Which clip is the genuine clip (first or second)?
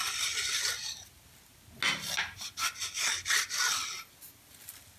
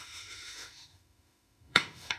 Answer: first